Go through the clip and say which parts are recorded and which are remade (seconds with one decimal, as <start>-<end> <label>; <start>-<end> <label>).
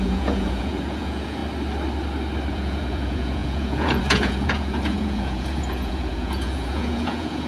0.0-1.4 remade; 1.4-2.5 recorded; 2.5-7.5 remade